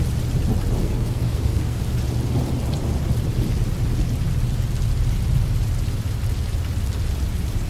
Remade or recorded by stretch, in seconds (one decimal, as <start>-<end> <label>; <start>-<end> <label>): 0.0-0.8 recorded; 0.8-1.8 remade; 1.8-7.7 recorded